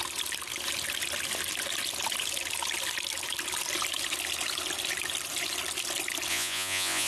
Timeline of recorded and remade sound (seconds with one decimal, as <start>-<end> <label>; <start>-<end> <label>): 0.0-6.3 recorded; 6.3-7.1 remade